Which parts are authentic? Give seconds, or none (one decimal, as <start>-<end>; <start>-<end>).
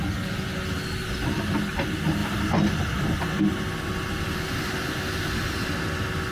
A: 0.0-6.3